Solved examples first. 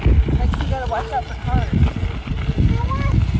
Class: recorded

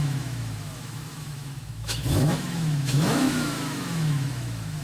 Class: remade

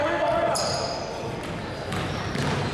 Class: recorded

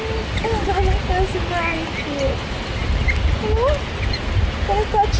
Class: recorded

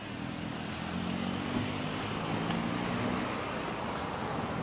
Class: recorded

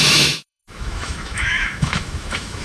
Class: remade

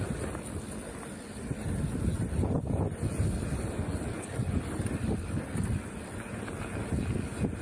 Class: recorded